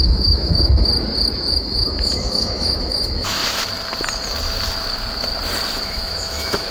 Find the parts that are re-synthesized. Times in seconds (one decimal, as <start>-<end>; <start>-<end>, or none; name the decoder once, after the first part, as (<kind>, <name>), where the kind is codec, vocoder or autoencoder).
0.0-0.9 (autoencoder, DAC-VAE); 1.5-3.4; 5.8-6.7